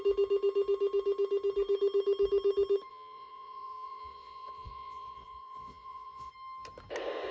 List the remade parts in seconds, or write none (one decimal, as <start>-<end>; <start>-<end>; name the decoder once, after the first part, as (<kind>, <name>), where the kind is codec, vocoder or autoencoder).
2.9-6.3 (vocoder, Vocos)